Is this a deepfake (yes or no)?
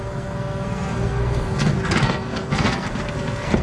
yes